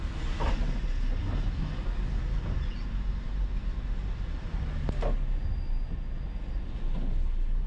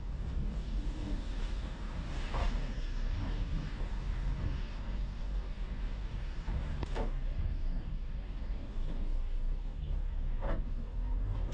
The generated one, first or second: second